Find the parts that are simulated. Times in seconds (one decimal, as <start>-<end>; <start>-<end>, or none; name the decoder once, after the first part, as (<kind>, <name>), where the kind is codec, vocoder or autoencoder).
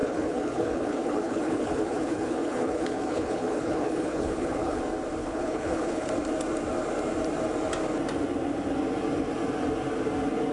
0.0-4.8 (codec, HILCodec); 5.2-6.1